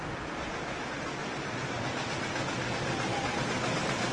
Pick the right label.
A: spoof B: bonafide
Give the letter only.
B